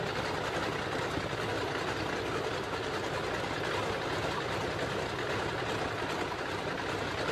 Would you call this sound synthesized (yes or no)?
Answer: no